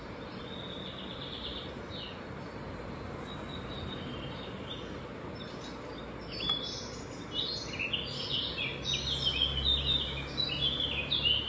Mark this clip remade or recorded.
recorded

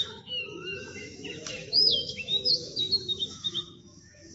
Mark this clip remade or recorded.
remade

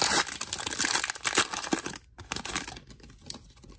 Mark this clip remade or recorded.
recorded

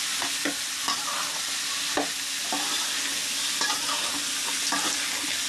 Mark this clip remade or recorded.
recorded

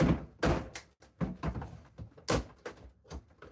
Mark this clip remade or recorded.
recorded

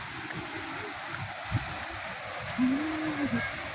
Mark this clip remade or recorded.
recorded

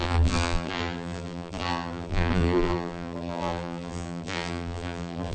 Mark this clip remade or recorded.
remade